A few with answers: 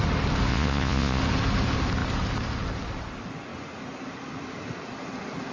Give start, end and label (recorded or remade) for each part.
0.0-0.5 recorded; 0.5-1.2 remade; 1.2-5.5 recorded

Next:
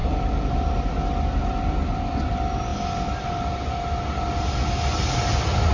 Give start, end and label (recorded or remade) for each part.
0.0-5.7 recorded

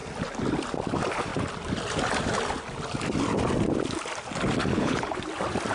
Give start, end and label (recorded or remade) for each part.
0.0-4.7 recorded; 4.7-5.2 remade; 5.2-5.7 recorded

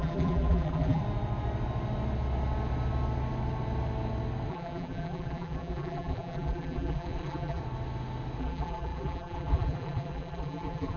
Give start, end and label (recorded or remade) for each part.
0.0-1.0 remade; 1.0-4.5 recorded; 4.5-7.6 remade; 7.6-8.4 recorded; 8.4-11.0 remade